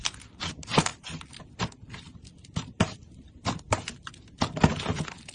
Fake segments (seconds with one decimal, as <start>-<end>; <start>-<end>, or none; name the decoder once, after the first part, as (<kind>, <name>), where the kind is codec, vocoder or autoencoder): 0.9-4.1 (vocoder, BigVGAN v2)